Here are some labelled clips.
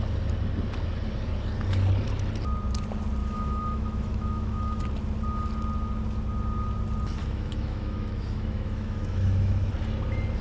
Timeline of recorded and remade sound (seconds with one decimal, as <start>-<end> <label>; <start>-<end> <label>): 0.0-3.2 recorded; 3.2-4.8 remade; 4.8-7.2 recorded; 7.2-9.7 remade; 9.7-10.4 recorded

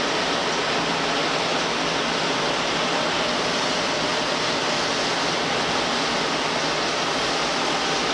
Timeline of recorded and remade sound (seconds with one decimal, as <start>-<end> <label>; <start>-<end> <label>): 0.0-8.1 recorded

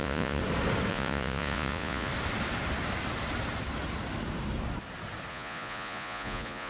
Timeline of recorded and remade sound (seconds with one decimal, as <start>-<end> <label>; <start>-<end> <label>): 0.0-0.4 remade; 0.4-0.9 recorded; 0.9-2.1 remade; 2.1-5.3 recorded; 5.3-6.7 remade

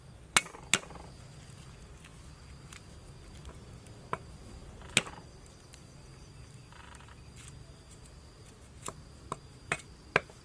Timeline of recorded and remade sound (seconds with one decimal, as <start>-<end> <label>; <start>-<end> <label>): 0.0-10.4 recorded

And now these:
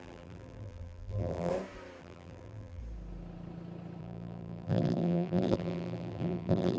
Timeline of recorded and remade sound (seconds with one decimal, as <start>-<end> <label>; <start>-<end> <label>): 0.0-1.5 remade; 1.5-2.0 recorded; 2.0-2.8 remade; 2.8-4.0 recorded; 4.0-6.8 remade

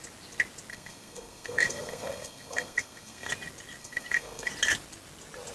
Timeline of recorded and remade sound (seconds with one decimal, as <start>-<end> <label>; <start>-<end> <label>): 0.0-0.7 recorded; 0.7-3.3 remade; 3.3-3.8 recorded; 3.8-4.5 remade; 4.5-5.5 recorded